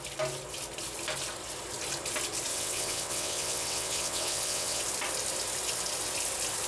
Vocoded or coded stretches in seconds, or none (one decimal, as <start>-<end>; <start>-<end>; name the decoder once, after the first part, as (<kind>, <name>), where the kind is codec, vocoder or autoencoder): 2.5-4.8 (vocoder, WaveNeXt)

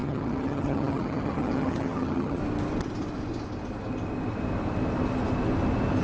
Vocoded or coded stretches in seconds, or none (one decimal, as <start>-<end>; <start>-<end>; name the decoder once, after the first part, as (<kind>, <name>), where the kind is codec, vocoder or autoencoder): 0.0-2.4 (vocoder, HiFi-GAN)

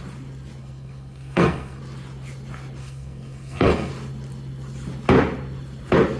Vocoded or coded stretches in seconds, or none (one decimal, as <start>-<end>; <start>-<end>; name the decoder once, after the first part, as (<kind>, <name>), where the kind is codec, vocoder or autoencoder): 0.6-1.8 (codec, SNAC); 2.8-3.9

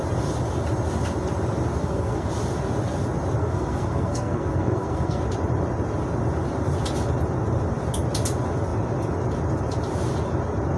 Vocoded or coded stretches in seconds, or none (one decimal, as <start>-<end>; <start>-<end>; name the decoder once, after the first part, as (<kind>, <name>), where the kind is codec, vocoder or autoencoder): 1.8-2.3 (codec, SNAC); 3.4-5.2

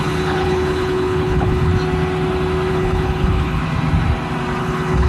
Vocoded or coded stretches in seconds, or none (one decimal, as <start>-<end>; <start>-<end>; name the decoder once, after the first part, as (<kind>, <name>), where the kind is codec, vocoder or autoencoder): 0.0-1.7 (codec, HILCodec); 2.7-3.6; 4.6-5.1

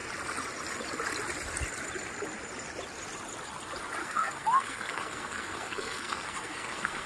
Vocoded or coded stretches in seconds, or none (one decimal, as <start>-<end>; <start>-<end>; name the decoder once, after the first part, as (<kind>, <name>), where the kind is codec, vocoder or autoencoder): 4.0-7.1 (codec, SNAC)